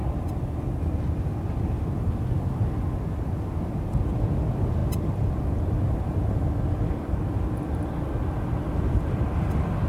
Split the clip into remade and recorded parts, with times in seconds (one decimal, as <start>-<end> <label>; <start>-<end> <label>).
0.0-9.9 recorded